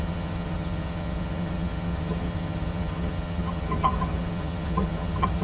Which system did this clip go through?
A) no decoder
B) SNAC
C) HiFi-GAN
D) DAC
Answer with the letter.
C